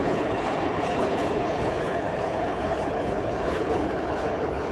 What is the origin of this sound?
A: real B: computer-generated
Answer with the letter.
B